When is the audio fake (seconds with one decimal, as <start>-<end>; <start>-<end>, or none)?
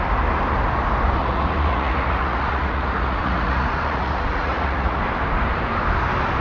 1.2-5.0